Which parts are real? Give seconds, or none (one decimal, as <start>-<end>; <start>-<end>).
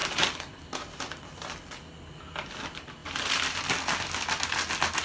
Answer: 1.5-5.0